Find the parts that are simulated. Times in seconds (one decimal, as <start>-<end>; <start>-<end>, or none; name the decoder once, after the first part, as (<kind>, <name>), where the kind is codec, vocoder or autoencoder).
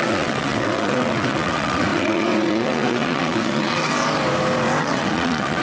0.0-3.9 (vocoder, WaveNeXt); 4.8-5.6